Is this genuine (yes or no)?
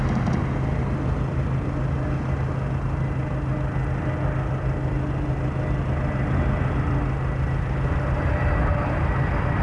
yes